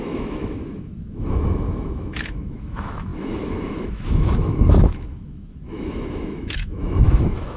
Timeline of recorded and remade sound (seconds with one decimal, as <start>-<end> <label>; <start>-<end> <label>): 0.0-7.6 remade

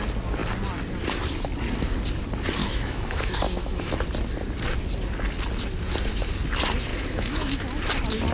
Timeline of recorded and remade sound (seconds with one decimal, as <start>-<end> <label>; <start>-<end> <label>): 0.0-2.6 recorded; 2.6-3.9 remade; 3.9-6.9 recorded; 6.9-7.6 remade; 7.6-8.3 recorded

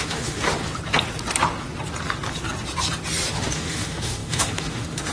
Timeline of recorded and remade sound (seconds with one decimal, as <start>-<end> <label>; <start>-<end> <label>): 0.0-0.6 remade; 0.6-3.3 recorded; 3.3-5.1 remade

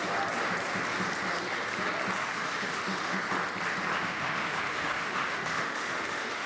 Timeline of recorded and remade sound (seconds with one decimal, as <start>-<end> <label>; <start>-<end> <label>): 0.0-2.2 recorded; 2.2-3.2 remade; 3.2-4.0 recorded; 4.0-6.5 remade

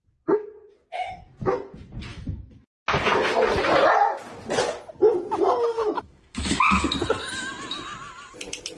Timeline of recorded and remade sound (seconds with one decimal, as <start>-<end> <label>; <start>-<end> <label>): 0.0-2.1 recorded; 2.1-2.7 remade; 2.7-5.8 recorded; 5.8-6.8 remade; 6.8-8.8 recorded

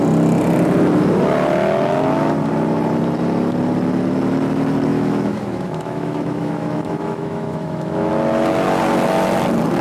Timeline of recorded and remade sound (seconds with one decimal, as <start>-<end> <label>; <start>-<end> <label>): 0.0-4.9 recorded; 4.9-8.1 remade; 8.1-9.8 recorded

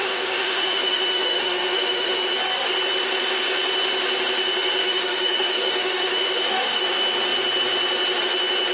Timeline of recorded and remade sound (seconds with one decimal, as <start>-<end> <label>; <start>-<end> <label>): 0.0-2.2 remade; 2.2-4.8 recorded; 4.8-6.8 remade; 6.8-8.7 recorded